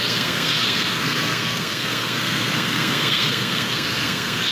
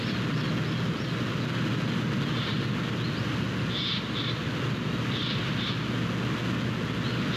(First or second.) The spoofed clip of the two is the first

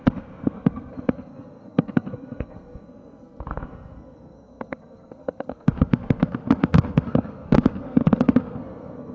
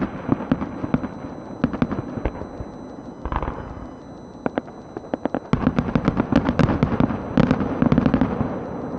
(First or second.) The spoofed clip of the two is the first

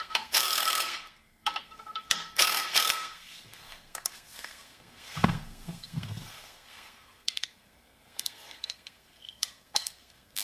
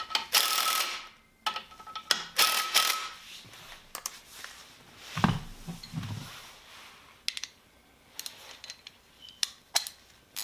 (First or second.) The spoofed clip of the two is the first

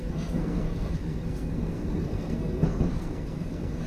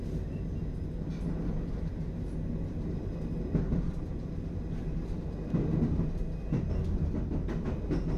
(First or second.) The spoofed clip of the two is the first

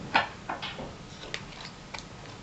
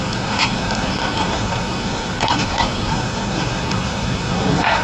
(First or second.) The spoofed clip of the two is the second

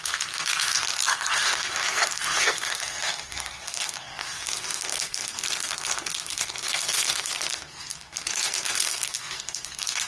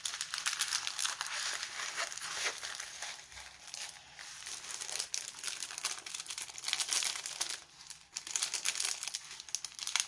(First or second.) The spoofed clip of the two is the first